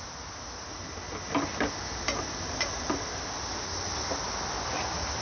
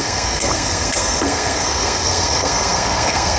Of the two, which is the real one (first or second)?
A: first